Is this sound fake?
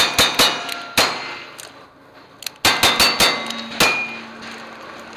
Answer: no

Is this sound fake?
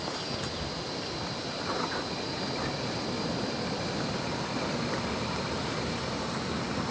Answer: no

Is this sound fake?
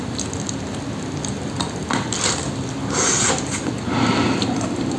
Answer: no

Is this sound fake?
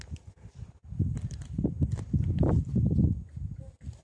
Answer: no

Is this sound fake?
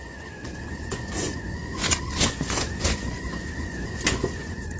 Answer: yes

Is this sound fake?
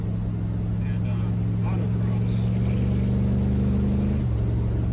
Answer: no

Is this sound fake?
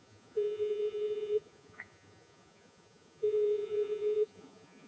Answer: yes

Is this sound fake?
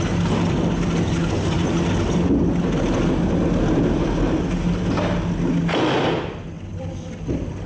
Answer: no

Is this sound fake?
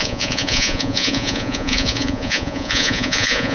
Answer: yes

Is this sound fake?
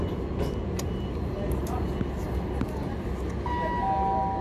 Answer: no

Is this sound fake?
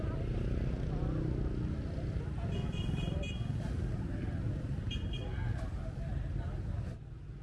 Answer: no